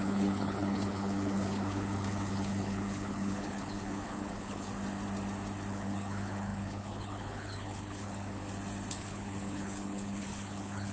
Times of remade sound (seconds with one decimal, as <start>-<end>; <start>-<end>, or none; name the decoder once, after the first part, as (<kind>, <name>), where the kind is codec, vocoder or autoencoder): 0.0-4.7 (codec, HILCodec); 5.7-8.4; 8.9-10.9